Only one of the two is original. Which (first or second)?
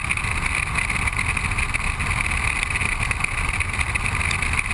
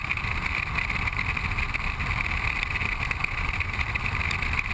first